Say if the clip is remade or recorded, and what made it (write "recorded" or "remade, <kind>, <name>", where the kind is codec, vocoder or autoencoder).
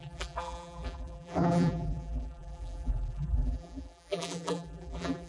remade, vocoder, BigVGAN v2